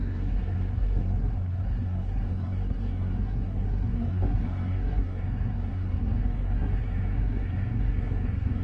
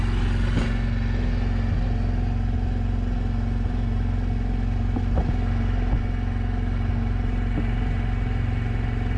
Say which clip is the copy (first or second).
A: first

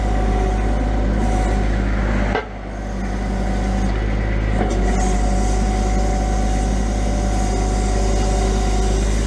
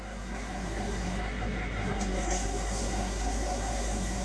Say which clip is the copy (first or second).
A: second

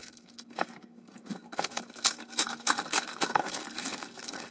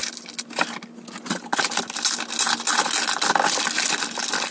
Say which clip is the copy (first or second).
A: first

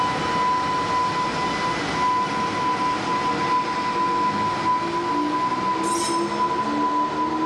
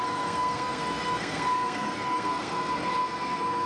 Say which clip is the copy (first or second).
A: second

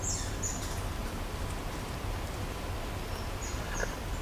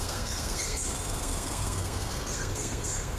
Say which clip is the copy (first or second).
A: second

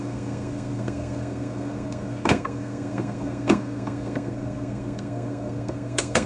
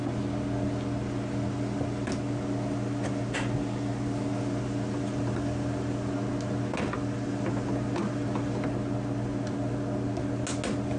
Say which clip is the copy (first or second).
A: first